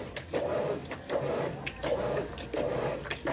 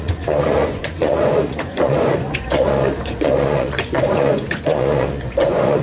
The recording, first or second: first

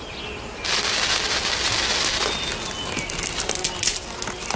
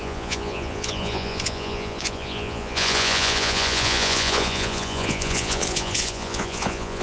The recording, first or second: first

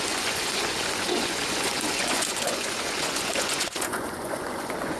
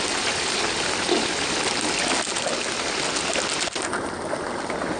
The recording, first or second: second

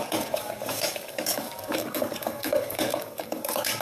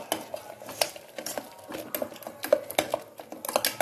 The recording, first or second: second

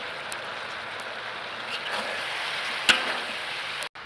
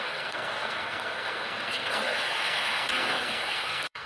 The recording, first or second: first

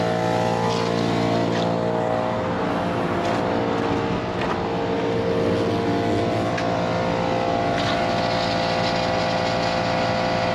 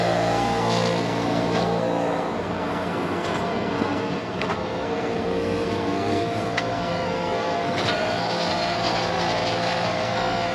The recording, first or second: first